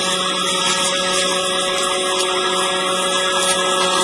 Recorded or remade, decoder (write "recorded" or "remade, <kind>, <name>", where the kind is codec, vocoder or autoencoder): recorded